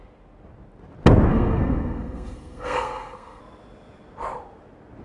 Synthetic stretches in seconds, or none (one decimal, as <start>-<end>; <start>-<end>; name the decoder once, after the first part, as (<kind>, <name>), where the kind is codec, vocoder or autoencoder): 1.3-3.4 (codec, SNAC)